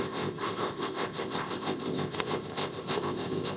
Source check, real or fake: fake